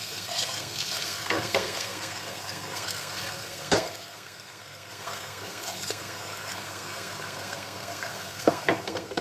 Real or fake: fake